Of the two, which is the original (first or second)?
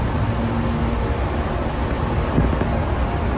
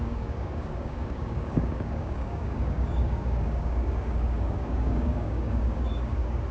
first